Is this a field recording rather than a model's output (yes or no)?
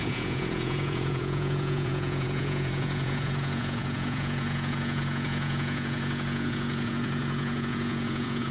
no